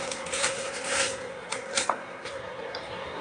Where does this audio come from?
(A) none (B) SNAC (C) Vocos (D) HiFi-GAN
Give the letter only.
B